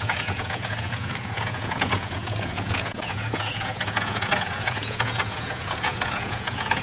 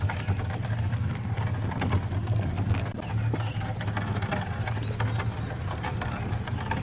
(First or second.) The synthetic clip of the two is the first